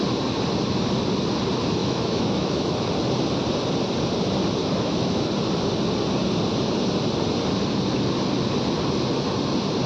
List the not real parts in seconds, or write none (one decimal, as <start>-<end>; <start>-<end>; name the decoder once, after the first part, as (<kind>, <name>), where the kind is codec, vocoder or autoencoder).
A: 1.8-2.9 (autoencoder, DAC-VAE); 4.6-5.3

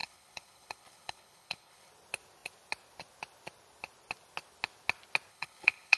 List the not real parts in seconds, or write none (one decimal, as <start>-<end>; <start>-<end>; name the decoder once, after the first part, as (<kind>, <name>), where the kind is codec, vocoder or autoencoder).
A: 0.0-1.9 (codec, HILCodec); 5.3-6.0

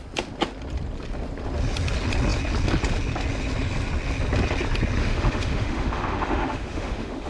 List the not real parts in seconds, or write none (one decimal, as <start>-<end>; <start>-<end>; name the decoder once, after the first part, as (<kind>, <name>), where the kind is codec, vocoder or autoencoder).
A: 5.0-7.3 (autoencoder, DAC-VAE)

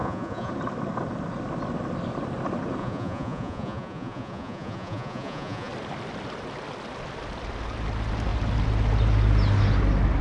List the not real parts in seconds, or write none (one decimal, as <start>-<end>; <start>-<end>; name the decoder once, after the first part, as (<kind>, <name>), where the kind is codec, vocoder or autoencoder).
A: 0.0-0.5 (vocoder, Vocos); 2.8-5.7

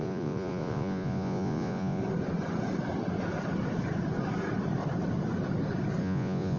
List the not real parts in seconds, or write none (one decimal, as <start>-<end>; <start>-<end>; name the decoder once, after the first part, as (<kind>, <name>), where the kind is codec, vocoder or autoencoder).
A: 0.0-2.0 (vocoder, Vocos); 6.0-6.6